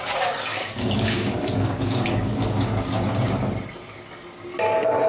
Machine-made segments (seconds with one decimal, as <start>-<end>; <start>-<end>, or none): 0.5-3.4